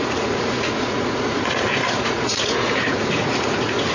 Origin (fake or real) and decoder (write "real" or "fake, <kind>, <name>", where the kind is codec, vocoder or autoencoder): fake, vocoder, Vocos